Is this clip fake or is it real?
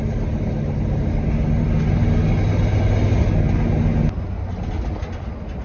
real